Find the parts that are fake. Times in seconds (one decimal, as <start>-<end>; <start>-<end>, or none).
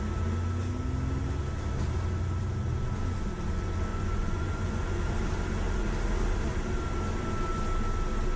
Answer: 3.9-5.0